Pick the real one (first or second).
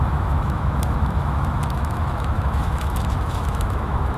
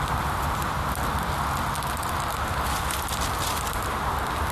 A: second